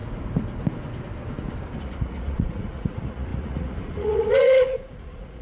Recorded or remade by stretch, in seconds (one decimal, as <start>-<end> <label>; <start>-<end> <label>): 0.0-1.8 recorded; 1.8-5.4 remade